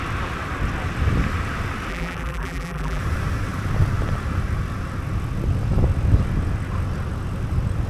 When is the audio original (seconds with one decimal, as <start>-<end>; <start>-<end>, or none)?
0.0-1.9; 3.0-7.9